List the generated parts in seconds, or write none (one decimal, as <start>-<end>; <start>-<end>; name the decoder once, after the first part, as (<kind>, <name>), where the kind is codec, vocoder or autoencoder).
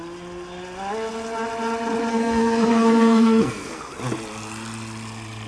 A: 2.1-3.9 (codec, SNAC)